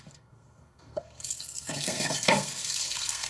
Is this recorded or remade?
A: remade